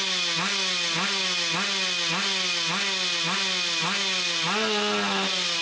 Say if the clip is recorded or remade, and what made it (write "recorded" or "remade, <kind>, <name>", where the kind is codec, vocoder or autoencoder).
recorded